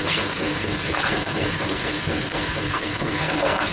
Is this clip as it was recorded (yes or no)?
no